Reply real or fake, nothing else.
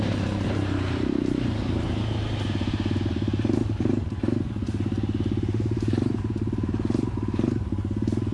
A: fake